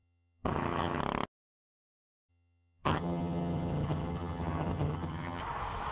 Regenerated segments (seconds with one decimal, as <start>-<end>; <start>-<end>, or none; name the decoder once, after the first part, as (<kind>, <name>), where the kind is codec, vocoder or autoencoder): 0.0-1.0 (vocoder, HiFi-GAN); 2.3-5.4

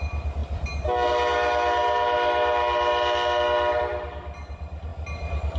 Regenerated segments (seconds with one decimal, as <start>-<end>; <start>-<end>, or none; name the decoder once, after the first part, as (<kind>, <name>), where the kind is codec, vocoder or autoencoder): none

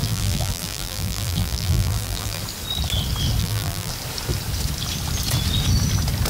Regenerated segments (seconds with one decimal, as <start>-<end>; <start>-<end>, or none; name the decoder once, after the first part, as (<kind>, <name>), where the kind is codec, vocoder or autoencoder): 0.0-2.4 (vocoder, BigVGAN v2); 3.4-3.9

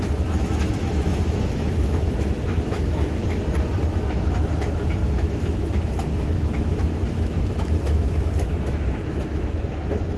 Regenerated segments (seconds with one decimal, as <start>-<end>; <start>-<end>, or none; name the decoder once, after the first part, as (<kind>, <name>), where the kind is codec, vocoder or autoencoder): 0.0-3.2 (autoencoder, DAC-VAE); 4.0-10.2